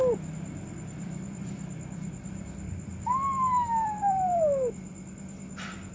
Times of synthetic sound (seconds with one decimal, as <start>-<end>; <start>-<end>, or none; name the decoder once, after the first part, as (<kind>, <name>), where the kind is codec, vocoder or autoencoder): 0.0-4.9 (vocoder, BigVGAN v2)